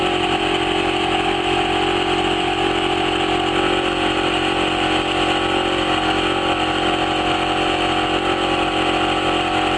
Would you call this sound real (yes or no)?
yes